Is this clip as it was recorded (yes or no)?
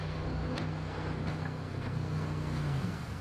no